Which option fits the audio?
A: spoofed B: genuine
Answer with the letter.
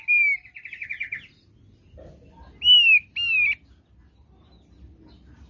B